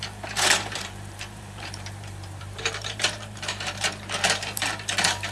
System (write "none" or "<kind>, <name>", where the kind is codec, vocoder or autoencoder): vocoder, BigVGAN v2